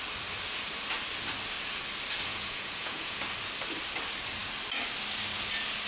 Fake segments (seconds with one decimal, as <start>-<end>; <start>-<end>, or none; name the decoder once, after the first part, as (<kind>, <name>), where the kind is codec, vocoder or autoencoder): 2.3-3.2 (vocoder, Vocos)